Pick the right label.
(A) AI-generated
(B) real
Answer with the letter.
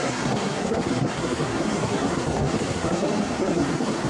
A